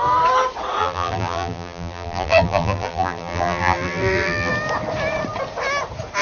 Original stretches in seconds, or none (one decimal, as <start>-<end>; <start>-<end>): 0.0-0.8; 4.5-6.2